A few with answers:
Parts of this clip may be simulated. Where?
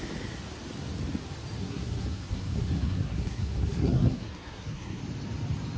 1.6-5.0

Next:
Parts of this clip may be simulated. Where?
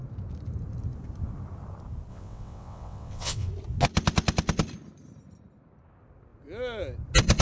2.1-3.5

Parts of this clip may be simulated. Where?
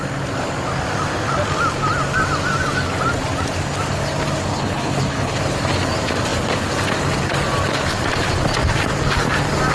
4.5-5.4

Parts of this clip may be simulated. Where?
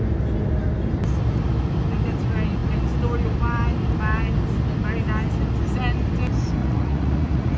6.6-7.6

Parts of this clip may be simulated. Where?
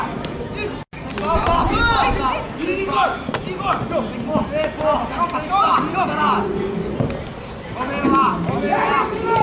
none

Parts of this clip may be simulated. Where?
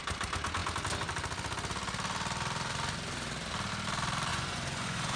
4.3-5.2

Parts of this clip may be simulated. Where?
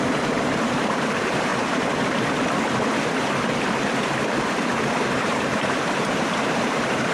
0.0-1.5; 5.2-7.1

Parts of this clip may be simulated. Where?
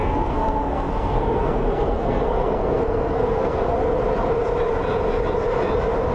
0.0-3.7